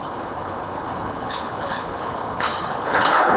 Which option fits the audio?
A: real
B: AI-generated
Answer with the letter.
B